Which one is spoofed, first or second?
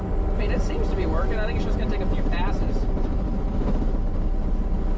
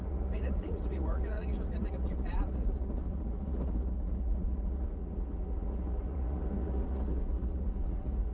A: second